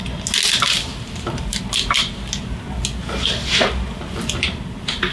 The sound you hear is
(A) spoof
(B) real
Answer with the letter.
B